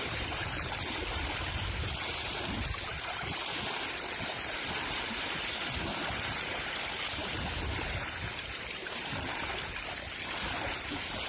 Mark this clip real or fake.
fake